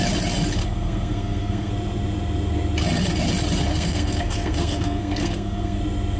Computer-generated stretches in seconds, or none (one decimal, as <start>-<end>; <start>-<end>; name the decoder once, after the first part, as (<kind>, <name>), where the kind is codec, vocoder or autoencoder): 0.6-1.7 (codec, SNAC); 3.7-5.8